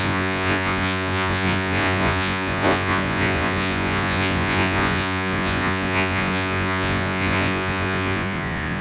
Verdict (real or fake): fake